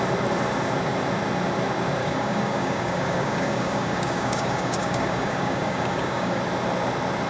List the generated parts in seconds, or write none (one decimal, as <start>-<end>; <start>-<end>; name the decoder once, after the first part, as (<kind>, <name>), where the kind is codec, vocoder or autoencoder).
2.0-6.4 (codec, DAC)